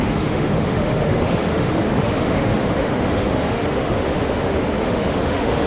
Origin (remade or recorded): remade